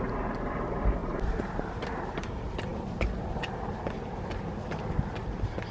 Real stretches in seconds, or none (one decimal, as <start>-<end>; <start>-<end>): 0.0-1.0; 2.0-5.7